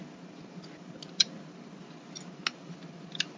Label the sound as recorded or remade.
recorded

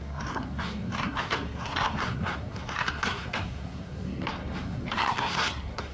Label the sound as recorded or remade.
remade